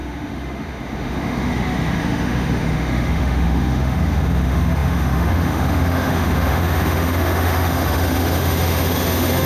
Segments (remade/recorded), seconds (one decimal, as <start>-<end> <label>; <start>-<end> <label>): 0.0-9.5 remade